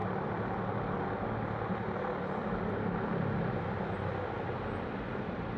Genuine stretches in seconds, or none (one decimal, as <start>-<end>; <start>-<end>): 2.4-4.9